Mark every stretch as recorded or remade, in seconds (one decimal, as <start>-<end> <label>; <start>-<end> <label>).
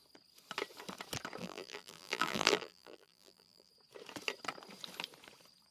0.0-1.4 recorded; 1.4-3.7 remade; 3.7-5.7 recorded